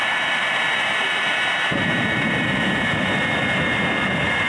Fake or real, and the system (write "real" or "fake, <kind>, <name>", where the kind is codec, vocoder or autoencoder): fake, vocoder, BigVGAN v2